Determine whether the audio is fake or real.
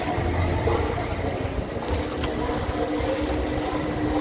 real